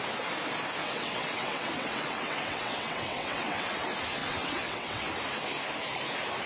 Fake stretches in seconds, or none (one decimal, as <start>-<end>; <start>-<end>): 0.8-3.7; 4.2-5.0